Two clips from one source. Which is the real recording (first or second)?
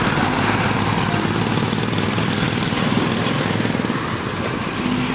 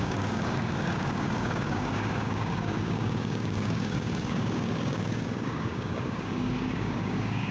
first